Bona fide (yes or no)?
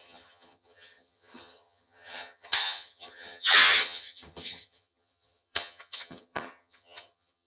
no